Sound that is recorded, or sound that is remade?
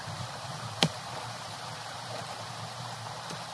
remade